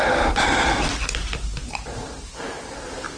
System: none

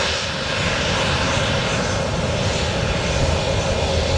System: none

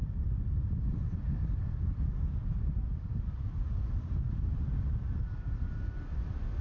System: none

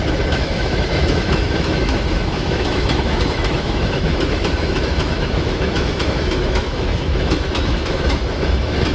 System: autoencoder, DAC-VAE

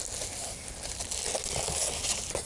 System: none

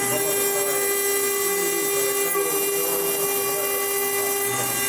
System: none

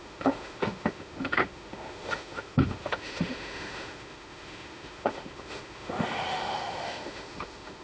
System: autoencoder, DAC-VAE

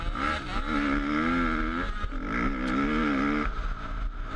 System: none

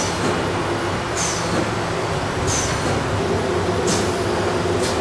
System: none